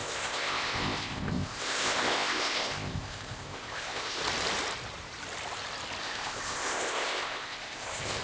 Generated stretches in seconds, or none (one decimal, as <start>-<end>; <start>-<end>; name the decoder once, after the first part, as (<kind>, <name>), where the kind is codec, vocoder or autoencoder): 0.0-4.2 (codec, ZipCodec); 6.0-8.2